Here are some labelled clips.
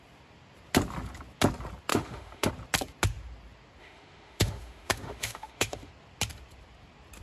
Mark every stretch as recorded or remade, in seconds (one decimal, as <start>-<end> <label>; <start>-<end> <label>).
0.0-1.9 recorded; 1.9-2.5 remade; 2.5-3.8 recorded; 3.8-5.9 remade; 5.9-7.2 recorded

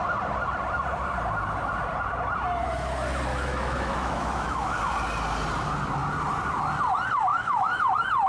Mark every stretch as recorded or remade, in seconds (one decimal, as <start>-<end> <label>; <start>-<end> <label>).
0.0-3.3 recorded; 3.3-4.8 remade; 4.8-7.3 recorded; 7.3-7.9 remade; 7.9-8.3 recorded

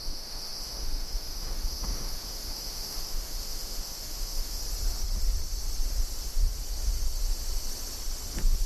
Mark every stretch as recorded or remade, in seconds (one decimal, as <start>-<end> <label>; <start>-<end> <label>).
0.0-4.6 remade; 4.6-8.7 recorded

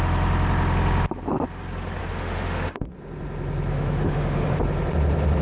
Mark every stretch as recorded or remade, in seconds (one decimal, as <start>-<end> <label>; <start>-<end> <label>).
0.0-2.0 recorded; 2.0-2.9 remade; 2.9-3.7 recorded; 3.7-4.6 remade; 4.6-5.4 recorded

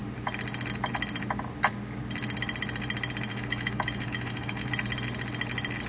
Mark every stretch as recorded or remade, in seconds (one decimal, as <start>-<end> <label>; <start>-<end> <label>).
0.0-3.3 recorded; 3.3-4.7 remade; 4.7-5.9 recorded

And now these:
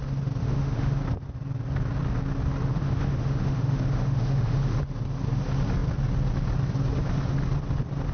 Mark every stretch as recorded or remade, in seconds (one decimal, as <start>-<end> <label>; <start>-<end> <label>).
0.0-0.4 recorded; 0.4-1.0 remade; 1.0-2.7 recorded; 2.7-4.8 remade; 4.8-8.1 recorded